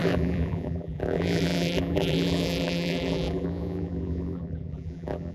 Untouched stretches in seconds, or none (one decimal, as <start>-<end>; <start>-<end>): none